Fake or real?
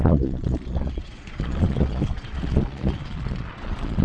fake